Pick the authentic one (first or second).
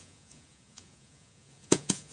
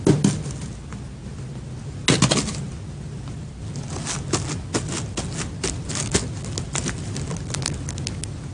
second